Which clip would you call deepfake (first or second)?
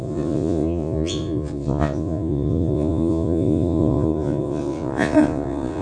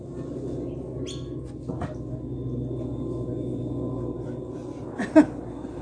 first